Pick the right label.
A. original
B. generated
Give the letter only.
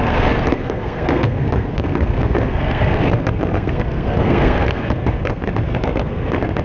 B